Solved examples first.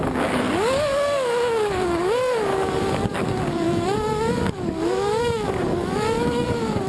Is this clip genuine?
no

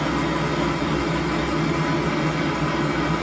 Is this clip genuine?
yes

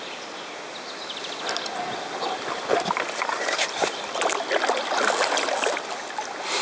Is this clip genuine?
yes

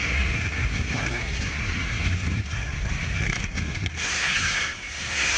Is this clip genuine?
no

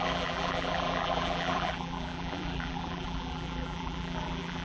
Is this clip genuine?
no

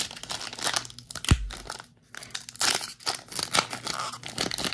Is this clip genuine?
yes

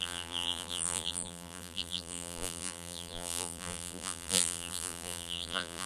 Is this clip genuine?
no